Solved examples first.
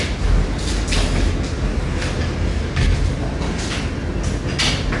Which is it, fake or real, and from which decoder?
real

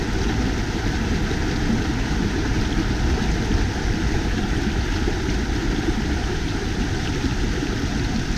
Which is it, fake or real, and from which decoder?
real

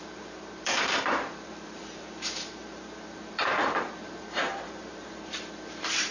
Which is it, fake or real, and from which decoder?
fake, vocoder, BigVGAN v2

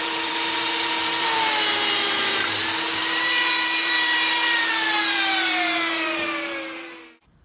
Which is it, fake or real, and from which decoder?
fake, vocoder, BigVGAN v2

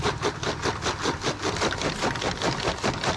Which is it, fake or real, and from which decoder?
real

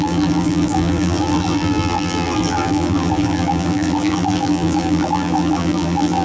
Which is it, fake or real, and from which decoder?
fake, vocoder, BigVGAN v2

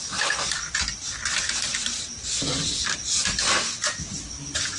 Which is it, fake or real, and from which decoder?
real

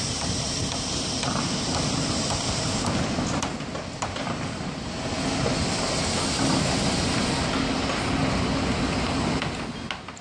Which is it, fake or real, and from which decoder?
real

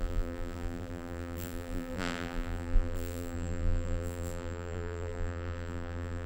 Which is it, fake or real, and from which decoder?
fake, vocoder, BigVGAN v2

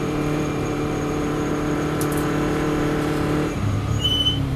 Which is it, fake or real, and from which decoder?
fake, vocoder, BigVGAN v2